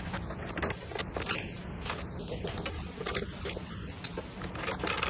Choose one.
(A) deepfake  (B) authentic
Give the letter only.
B